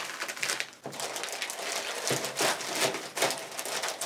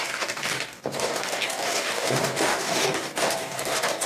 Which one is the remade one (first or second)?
second